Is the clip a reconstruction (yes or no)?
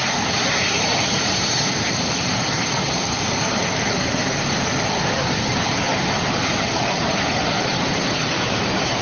yes